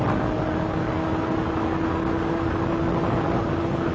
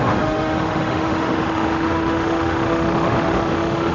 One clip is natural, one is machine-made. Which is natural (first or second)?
first